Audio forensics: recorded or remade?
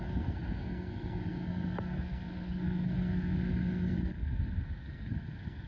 remade